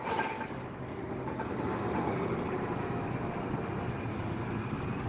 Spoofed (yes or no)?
no